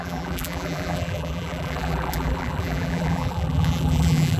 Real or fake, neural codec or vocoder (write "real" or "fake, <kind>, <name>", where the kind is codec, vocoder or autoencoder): fake, vocoder, BigVGAN v2